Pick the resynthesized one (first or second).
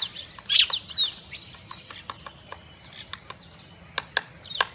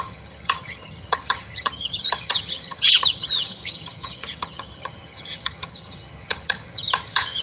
second